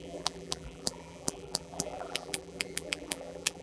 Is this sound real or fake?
fake